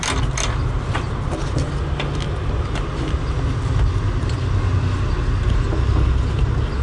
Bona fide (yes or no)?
yes